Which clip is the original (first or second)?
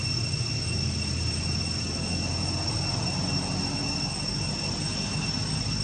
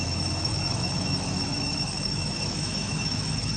first